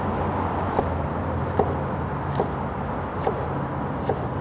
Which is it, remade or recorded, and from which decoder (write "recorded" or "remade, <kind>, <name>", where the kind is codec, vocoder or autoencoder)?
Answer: recorded